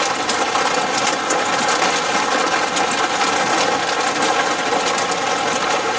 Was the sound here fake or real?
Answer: real